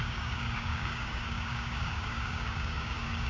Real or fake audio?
fake